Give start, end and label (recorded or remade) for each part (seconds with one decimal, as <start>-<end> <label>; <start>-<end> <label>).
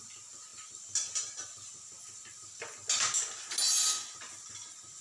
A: 0.0-5.0 recorded